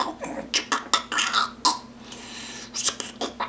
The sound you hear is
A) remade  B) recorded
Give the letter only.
B